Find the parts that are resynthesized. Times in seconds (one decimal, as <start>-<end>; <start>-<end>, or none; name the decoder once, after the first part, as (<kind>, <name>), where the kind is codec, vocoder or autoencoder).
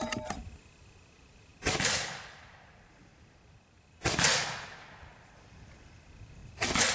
0.0-3.1 (vocoder, BigVGAN v2); 5.1-6.4